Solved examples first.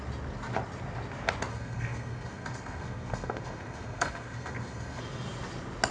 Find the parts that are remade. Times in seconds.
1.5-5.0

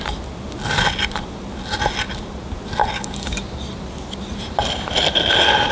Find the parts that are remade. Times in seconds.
2.8-3.4

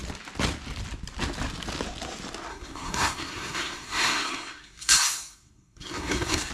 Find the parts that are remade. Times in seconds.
2.5-6.5

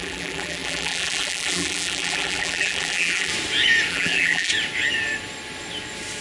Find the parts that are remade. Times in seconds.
0.0-3.3; 3.9-4.5

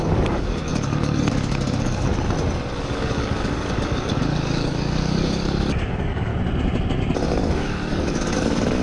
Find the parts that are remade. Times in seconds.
0.0-2.1; 2.8-6.3; 7.3-8.8

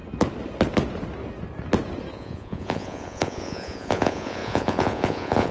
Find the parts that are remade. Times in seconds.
2.1-5.5

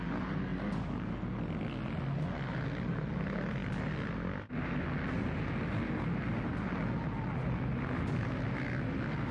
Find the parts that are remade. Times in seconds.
none